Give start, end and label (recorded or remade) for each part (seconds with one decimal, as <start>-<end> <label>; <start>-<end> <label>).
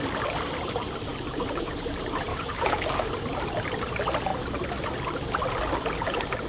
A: 0.0-2.3 recorded; 2.3-3.1 remade; 3.1-6.5 recorded